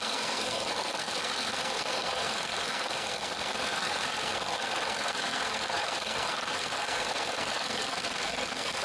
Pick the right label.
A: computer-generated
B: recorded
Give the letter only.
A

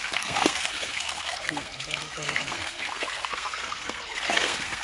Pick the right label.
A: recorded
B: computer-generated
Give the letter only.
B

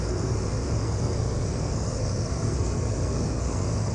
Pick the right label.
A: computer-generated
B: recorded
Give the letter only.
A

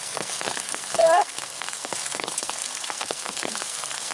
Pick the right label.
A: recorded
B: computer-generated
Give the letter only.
B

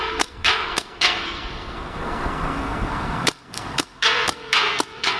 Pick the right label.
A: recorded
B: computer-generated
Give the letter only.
B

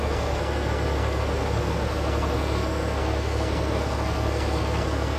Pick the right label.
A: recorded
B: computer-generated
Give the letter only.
B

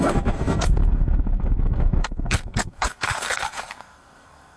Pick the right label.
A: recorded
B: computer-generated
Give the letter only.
B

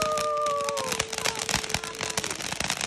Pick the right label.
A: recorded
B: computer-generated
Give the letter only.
A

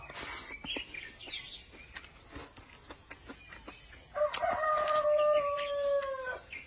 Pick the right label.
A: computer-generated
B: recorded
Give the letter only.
B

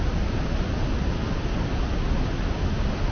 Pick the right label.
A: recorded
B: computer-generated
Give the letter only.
A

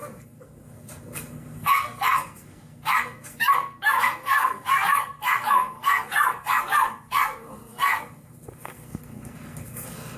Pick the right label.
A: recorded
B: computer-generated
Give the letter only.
B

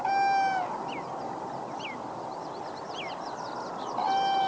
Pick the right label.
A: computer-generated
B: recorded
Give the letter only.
B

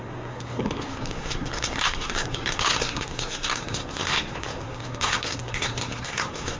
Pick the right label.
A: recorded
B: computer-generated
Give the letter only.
B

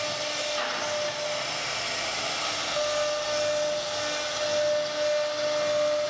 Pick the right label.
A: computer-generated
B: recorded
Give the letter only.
B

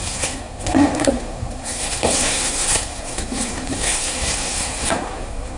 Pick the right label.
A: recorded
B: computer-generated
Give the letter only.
B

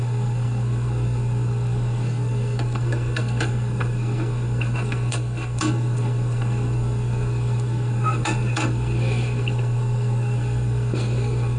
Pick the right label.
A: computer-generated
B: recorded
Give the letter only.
A